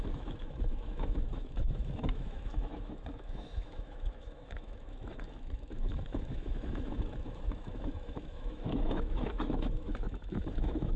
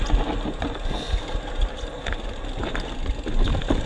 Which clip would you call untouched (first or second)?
second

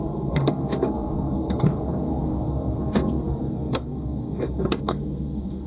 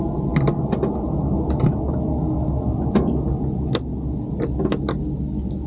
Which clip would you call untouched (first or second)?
second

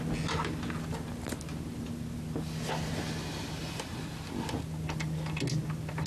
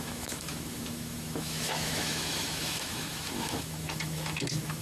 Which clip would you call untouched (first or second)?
first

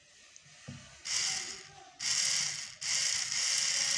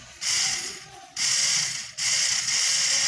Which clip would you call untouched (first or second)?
first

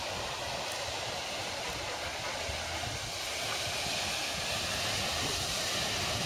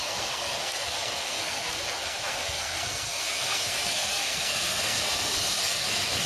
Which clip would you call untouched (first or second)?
first